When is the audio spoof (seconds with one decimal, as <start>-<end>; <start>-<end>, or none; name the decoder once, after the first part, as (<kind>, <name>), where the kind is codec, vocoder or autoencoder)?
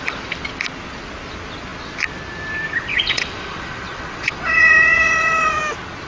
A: 2.9-5.6 (vocoder, Vocos)